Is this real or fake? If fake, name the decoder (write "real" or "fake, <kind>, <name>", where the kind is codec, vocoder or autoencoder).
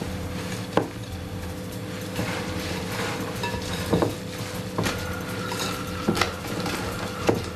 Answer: real